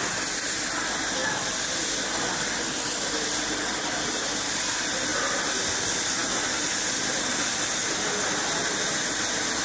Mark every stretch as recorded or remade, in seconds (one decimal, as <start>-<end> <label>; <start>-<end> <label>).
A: 0.0-1.2 recorded; 1.2-1.9 remade; 1.9-5.1 recorded; 5.1-5.8 remade; 5.8-6.2 recorded; 6.2-7.8 remade; 7.8-9.6 recorded